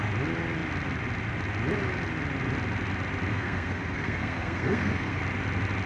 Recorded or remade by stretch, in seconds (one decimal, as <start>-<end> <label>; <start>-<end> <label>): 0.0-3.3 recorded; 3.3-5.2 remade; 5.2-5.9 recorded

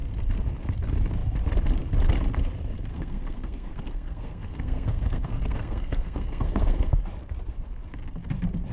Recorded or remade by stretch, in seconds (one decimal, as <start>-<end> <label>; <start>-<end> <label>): 0.0-2.9 recorded; 2.9-7.0 remade; 7.0-8.7 recorded

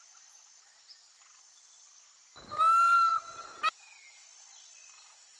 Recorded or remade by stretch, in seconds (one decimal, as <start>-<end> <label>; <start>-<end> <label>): 0.0-5.4 recorded